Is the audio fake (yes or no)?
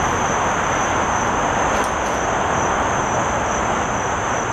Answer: no